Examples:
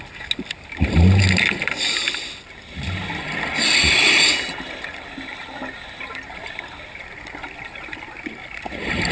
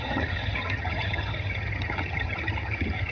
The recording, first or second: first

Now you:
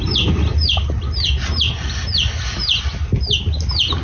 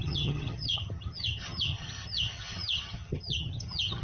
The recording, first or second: first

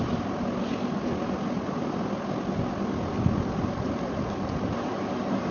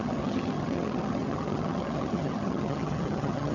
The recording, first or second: first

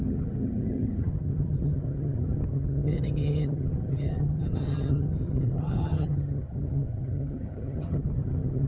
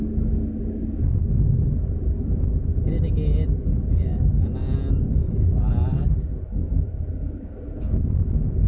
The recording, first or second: second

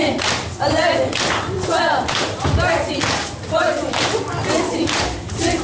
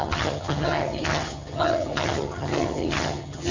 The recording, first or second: first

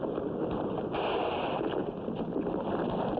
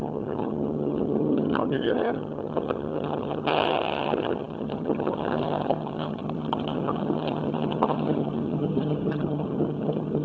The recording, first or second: first